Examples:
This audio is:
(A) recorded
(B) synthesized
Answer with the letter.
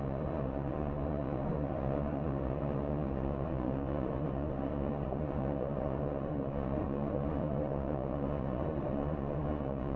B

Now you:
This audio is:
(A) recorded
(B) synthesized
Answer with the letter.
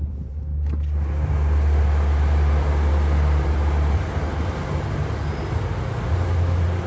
A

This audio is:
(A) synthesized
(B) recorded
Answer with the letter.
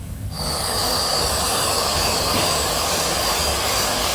A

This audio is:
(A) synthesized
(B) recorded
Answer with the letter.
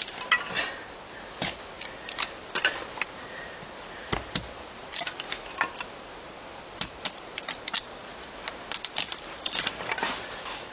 B